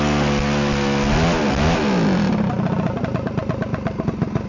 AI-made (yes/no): no